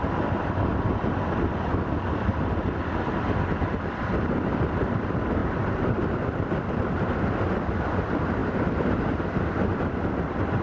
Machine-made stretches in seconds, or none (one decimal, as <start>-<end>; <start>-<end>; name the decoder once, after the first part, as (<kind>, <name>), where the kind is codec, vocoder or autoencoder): 1.7-5.0 (vocoder, BigVGAN v2); 5.4-6.8